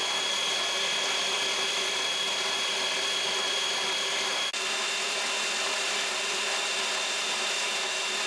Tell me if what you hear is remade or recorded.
recorded